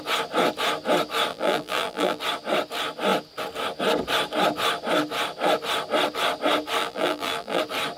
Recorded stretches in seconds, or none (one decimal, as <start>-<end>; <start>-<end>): 0.0-1.3; 2.2-6.8; 7.6-8.0